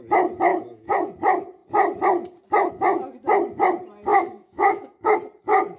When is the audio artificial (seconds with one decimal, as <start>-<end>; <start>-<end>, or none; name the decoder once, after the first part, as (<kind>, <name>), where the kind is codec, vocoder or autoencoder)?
0.5-1.1 (autoencoder, DAC-VAE); 4.1-5.1